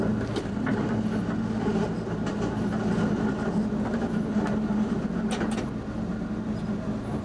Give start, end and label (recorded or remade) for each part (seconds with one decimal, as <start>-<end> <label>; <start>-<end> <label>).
0.0-7.2 recorded